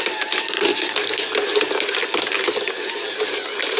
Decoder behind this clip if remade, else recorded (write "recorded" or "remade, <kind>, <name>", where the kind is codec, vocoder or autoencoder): recorded